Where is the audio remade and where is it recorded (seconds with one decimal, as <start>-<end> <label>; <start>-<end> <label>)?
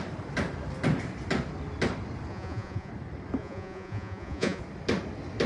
0.0-2.3 recorded; 2.3-2.9 remade; 2.9-3.4 recorded; 3.4-4.6 remade; 4.6-5.5 recorded